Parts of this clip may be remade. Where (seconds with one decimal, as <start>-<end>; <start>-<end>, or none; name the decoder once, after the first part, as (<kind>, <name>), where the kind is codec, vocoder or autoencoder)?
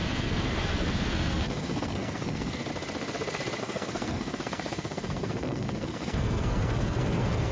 0.0-2.7 (codec, SNAC); 3.6-7.5